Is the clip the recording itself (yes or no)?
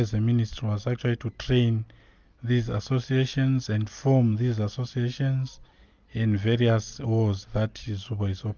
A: yes